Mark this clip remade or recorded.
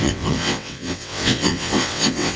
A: remade